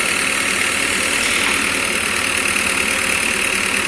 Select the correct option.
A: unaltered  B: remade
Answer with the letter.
A